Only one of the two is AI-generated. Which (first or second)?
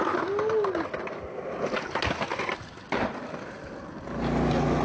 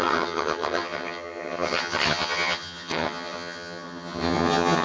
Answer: second